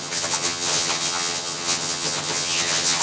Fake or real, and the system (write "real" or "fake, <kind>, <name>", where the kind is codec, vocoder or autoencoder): fake, vocoder, HiFi-GAN